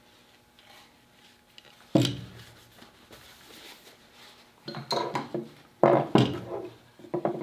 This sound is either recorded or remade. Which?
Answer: recorded